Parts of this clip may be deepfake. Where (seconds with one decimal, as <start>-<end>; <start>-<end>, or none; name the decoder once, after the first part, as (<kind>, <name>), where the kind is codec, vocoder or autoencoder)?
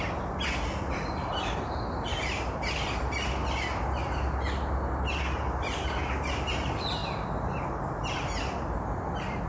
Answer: none